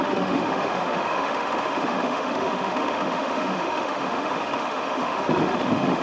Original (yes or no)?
no